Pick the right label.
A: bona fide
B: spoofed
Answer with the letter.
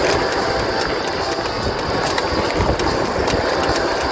A